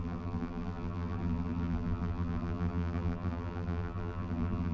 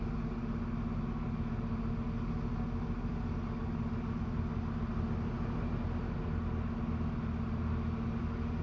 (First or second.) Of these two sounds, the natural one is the second